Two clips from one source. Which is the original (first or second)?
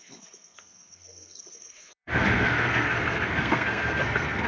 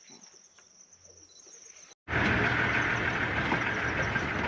second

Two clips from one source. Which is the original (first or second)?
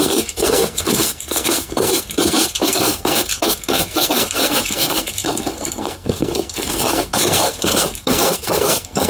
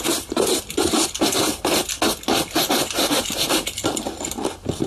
second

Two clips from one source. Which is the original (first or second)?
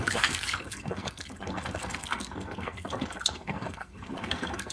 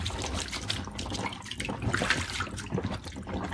second